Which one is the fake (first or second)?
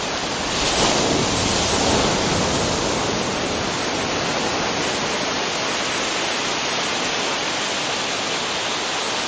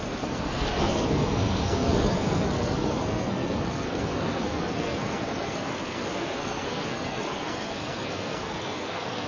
second